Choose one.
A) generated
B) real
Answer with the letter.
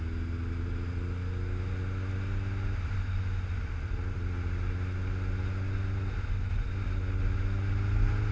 B